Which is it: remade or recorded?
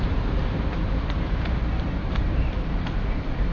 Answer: remade